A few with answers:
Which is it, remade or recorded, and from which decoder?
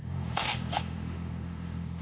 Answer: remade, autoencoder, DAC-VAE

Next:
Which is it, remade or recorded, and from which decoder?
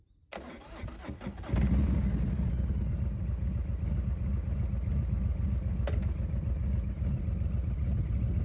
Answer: recorded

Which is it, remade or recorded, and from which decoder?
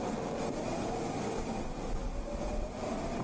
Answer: recorded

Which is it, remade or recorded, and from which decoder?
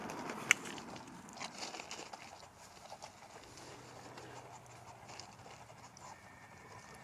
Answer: recorded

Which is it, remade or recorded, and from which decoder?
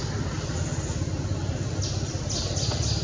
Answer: recorded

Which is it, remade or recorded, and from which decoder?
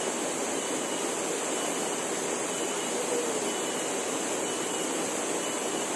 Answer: recorded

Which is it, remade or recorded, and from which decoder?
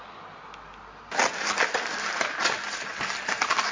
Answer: recorded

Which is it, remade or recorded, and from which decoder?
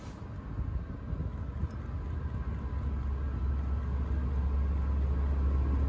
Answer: recorded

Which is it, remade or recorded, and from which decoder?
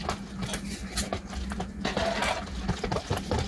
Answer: recorded